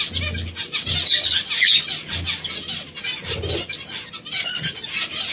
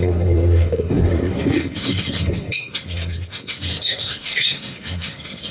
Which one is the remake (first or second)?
second